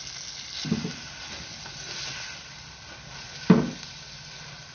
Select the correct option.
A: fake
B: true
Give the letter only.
B